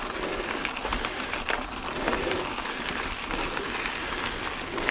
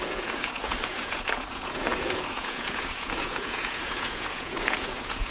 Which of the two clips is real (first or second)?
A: first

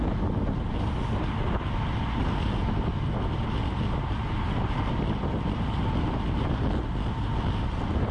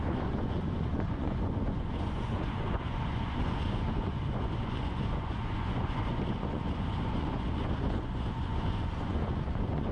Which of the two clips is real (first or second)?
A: first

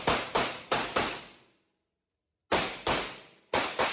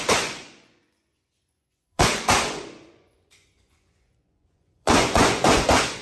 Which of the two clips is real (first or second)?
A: first